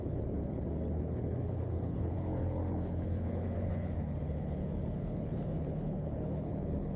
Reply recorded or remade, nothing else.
remade